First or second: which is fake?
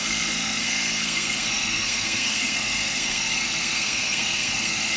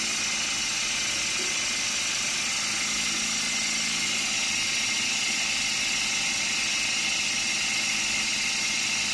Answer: first